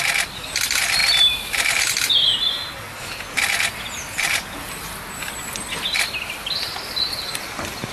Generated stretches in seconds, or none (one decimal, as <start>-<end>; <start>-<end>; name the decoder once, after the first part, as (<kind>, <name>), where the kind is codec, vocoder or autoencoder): none

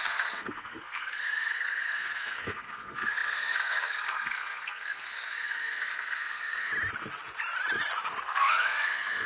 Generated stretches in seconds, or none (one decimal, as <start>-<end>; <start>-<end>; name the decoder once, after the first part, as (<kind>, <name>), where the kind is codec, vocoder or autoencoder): 0.0-6.7 (codec, SNAC); 8.2-9.3

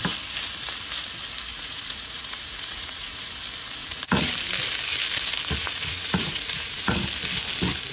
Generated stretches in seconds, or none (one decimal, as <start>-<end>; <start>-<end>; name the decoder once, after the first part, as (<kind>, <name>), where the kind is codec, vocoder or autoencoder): 1.5-3.3 (vocoder, Vocos); 3.8-4.3; 5.6-6.9

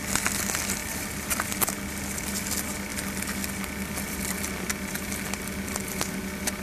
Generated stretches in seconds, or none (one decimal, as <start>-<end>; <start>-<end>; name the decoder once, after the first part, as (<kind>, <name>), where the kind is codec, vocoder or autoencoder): 0.8-1.4 (vocoder, BigVGAN v2); 2.9-5.0